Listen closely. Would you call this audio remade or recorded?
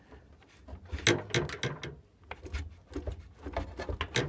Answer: recorded